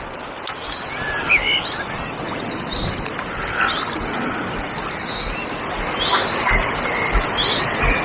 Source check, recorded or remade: recorded